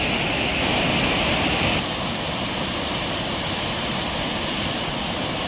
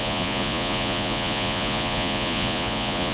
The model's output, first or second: second